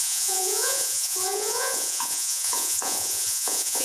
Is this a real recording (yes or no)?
no